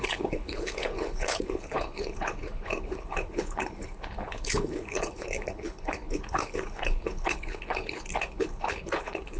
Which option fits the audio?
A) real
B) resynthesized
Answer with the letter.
B